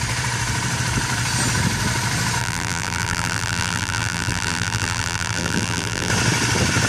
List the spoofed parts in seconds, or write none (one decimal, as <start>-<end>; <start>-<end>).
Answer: 2.4-6.1